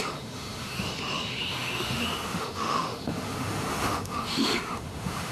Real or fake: fake